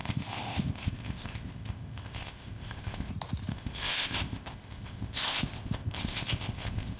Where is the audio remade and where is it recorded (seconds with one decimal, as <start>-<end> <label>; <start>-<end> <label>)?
0.0-3.1 remade; 3.1-3.5 recorded; 3.5-7.0 remade